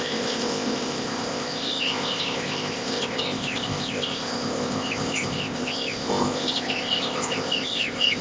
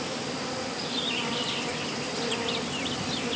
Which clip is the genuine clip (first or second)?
second